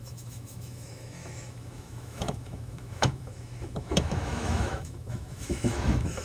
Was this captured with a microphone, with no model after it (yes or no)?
no